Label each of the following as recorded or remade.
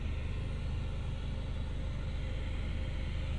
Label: recorded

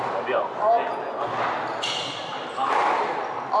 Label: recorded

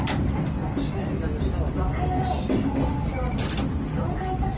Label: recorded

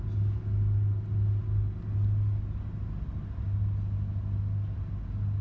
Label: recorded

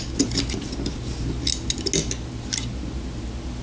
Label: recorded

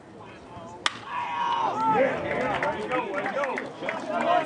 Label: recorded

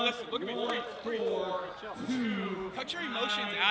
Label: recorded